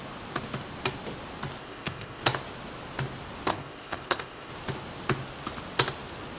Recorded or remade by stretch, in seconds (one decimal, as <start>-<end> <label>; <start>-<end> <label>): 0.0-1.6 recorded; 1.6-2.2 remade; 2.2-3.5 recorded; 3.5-4.5 remade; 4.5-6.4 recorded